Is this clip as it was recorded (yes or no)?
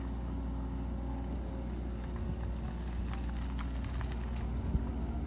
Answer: yes